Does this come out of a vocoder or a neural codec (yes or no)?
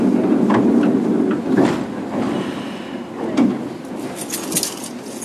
no